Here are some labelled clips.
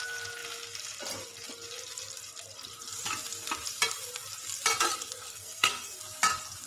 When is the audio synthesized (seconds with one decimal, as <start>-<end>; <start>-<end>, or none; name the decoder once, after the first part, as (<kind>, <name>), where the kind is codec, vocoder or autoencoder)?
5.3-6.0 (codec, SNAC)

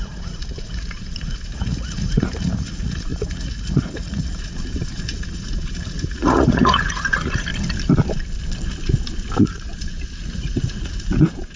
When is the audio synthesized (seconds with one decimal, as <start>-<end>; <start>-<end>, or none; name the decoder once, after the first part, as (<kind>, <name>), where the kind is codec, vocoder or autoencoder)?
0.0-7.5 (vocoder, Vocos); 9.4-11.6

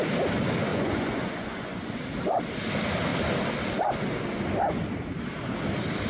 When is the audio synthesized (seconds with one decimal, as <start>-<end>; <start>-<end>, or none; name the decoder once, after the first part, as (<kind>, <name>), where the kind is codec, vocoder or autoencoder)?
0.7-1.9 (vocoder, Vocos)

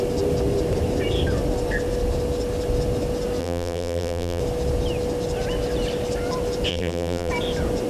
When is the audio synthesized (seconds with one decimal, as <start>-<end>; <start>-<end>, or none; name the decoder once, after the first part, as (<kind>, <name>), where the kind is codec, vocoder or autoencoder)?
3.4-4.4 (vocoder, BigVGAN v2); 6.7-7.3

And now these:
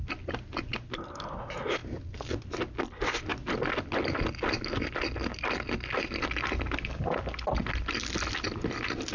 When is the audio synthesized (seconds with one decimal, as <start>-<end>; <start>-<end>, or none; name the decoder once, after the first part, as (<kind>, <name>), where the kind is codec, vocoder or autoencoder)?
none